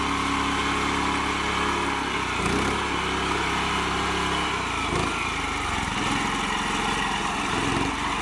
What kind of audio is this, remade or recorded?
recorded